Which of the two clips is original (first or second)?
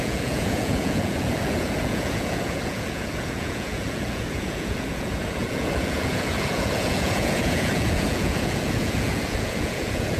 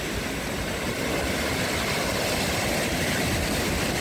second